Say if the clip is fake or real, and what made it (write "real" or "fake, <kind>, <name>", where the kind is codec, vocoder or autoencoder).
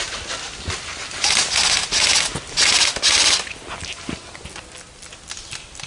real